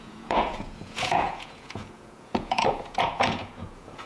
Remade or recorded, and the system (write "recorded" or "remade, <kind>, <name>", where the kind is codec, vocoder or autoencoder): remade, vocoder, Vocos